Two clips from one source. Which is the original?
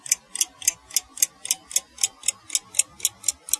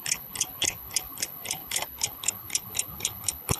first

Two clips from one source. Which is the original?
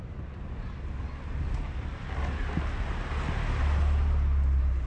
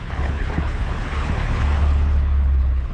first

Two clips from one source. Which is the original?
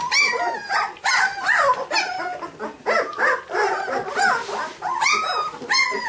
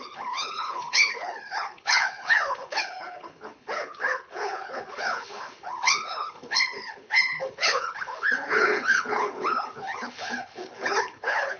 first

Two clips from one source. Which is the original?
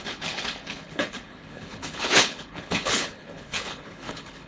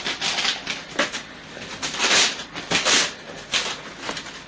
second